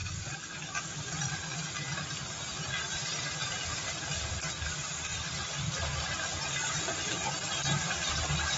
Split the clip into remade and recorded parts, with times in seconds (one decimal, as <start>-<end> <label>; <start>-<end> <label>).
0.0-5.1 recorded; 5.1-6.8 remade; 6.8-8.6 recorded